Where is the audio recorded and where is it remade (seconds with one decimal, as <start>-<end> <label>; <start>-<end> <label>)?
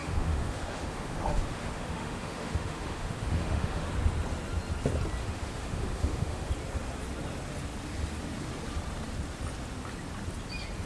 0.0-3.9 remade; 3.9-5.2 recorded; 5.2-6.5 remade; 6.5-10.9 recorded